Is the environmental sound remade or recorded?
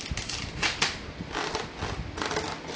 recorded